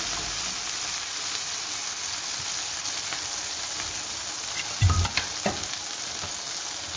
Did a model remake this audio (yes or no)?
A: no